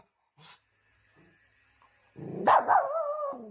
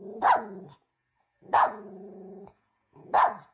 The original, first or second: first